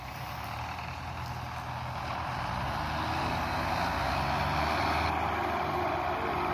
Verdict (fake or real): real